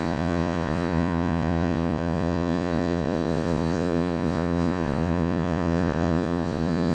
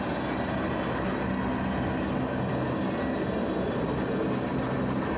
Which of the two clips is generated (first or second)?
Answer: first